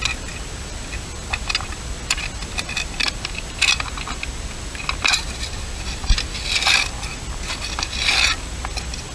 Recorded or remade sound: recorded